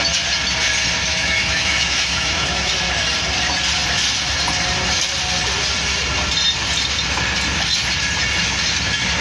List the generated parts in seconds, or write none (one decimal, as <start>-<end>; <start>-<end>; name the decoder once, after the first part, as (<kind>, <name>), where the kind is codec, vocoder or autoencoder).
1.1-2.7 (autoencoder, DAC-VAE)